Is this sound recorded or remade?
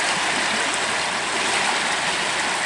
recorded